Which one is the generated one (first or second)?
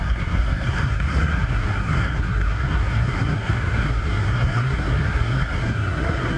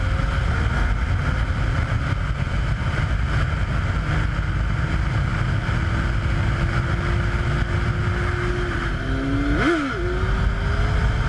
first